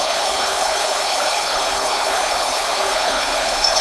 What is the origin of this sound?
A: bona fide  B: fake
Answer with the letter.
B